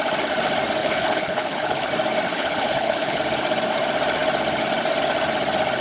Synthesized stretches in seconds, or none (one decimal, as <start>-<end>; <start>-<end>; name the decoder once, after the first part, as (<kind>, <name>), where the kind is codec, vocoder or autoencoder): 0.8-1.9 (codec, HILCodec); 2.3-3.2

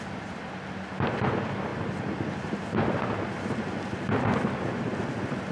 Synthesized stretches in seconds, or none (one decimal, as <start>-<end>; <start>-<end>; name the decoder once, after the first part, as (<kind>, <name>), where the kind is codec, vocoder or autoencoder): none

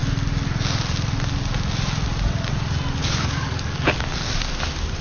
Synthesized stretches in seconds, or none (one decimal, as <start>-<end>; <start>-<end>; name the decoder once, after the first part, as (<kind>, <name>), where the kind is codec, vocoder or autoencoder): 3.0-4.5 (codec, DAC)

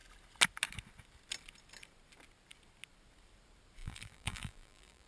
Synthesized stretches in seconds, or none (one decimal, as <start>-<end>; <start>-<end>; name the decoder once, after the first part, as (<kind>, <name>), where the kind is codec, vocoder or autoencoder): 3.8-5.1 (vocoder, BigVGAN v2)

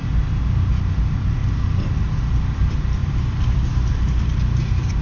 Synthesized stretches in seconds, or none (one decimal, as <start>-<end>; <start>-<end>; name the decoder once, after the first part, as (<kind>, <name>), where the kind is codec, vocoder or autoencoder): 3.0-3.9 (vocoder, BigVGAN v2)